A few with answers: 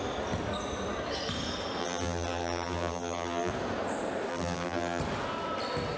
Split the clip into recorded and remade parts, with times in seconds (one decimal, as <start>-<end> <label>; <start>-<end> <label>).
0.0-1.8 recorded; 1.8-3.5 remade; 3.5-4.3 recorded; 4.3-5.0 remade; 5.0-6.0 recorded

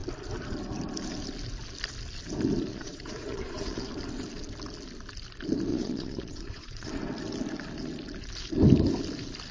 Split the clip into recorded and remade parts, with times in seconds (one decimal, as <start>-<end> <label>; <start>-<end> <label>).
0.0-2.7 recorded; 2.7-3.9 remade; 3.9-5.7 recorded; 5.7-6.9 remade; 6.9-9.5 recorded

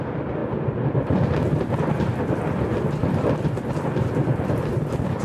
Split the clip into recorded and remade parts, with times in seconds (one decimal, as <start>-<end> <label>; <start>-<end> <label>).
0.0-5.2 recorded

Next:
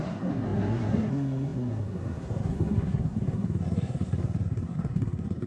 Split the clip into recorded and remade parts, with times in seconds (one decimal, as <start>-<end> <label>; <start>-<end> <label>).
0.0-5.5 remade

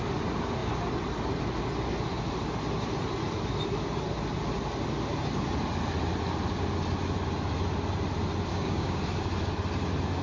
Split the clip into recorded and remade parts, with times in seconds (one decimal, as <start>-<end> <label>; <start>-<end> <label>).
0.0-8.5 recorded; 8.5-9.0 remade; 9.0-10.2 recorded

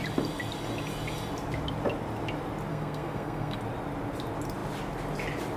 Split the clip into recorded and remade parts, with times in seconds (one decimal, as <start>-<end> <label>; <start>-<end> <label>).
0.0-2.7 recorded; 2.7-3.6 remade; 3.6-5.6 recorded

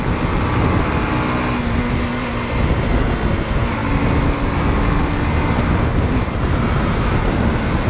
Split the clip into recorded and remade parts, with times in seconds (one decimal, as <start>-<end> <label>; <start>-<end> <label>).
0.0-7.9 recorded

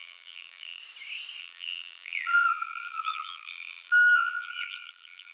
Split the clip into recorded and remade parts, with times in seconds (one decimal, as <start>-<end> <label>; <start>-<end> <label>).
0.0-0.8 remade; 0.8-1.4 recorded; 1.4-5.3 remade